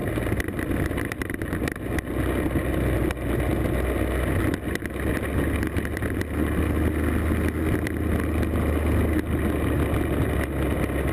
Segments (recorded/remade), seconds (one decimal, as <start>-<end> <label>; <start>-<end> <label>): 0.0-11.1 recorded